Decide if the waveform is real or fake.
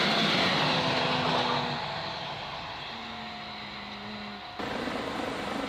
real